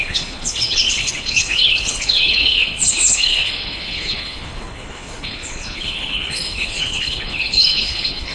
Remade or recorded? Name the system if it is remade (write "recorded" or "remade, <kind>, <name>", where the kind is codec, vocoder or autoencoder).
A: remade, codec, HILCodec